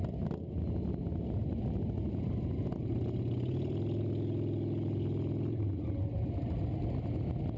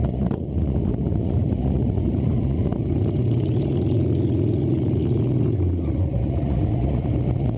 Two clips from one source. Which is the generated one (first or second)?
second